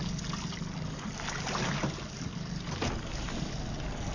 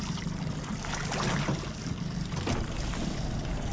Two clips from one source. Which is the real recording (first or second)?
first